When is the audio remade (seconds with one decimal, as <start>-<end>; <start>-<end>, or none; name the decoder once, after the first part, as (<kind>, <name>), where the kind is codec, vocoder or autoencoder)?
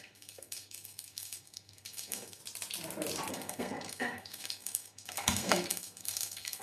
0.0-2.4 (codec, SNAC); 3.3-6.6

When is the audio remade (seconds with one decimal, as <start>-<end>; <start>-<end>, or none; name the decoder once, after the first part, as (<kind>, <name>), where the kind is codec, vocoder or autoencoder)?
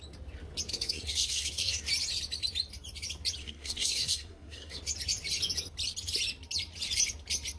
0.7-1.9 (codec, SNAC); 3.4-4.8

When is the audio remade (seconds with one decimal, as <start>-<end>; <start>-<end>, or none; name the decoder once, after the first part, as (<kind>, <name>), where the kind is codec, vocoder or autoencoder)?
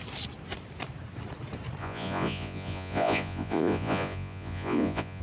1.8-5.2 (vocoder, Vocos)